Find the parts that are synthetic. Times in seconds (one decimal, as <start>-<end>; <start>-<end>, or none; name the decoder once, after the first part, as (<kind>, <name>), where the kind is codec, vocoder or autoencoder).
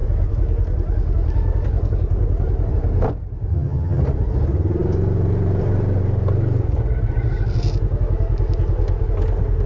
3.5-4.0 (vocoder, HiFi-GAN)